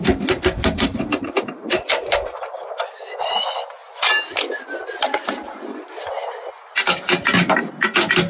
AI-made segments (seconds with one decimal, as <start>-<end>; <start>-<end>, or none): 1.1-3.0